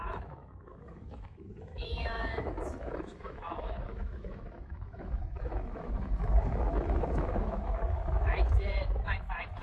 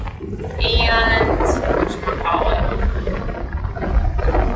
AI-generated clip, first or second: first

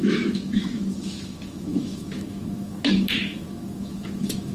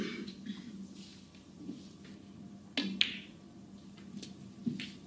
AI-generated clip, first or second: first